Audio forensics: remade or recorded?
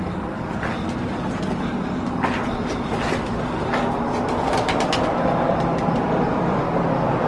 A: recorded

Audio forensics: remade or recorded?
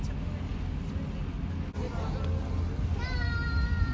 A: recorded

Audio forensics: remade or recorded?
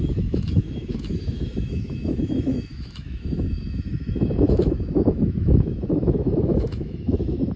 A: remade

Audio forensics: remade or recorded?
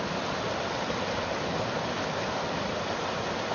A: recorded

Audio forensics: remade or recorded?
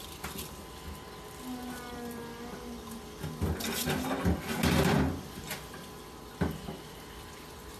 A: recorded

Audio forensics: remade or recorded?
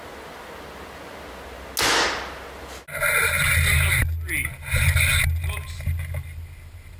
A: recorded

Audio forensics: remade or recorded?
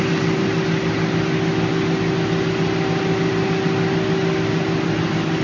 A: recorded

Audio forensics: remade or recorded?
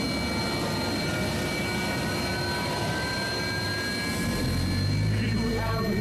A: recorded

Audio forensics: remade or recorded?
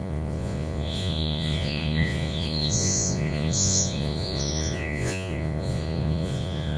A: remade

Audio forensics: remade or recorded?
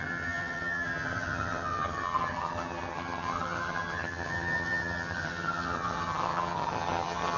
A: remade